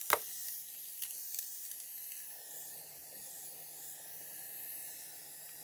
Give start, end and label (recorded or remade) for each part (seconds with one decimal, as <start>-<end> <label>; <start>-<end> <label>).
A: 0.0-5.6 recorded